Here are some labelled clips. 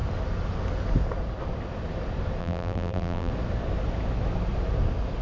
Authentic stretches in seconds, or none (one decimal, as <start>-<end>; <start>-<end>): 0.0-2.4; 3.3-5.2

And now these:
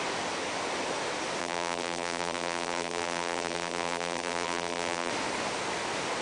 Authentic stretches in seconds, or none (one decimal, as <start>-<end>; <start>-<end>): 0.0-1.4; 5.1-6.2

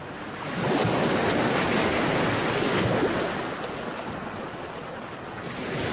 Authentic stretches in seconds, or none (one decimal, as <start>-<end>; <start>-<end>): 0.0-5.9

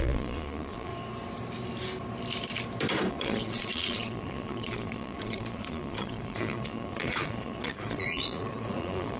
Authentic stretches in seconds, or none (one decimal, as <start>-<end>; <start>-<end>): 0.9-3.1

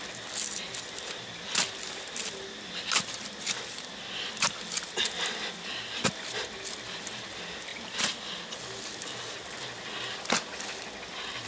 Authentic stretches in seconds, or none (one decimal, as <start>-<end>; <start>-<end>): 0.0-11.5